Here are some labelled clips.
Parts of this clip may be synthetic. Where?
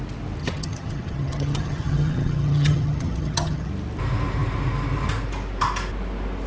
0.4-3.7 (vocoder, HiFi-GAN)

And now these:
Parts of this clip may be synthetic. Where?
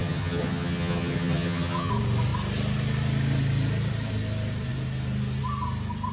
0.0-1.9 (vocoder, HiFi-GAN)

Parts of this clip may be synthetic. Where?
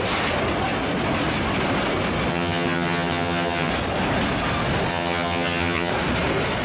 2.3-3.7 (vocoder, HiFi-GAN); 4.9-5.9